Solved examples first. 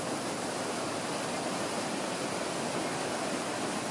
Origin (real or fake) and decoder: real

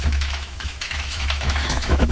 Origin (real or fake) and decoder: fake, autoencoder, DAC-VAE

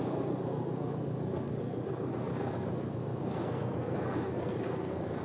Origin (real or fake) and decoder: fake, codec, SNAC